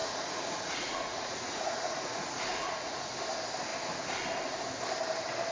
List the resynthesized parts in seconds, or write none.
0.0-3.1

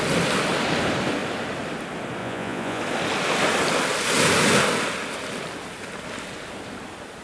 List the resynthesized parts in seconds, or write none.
2.2-2.8

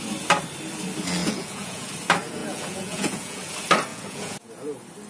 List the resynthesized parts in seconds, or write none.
1.2-1.9; 2.4-3.4; 3.9-4.5